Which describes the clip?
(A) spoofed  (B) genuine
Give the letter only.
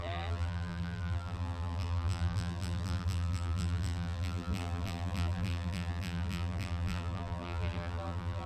A